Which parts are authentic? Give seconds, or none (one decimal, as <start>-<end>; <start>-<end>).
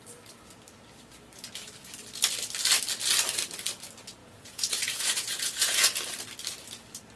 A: 0.0-4.2; 5.9-7.2